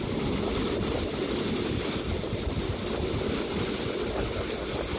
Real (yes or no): yes